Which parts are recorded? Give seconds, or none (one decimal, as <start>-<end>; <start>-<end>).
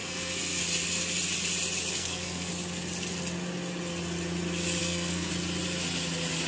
0.6-1.9; 2.5-4.8; 5.3-6.5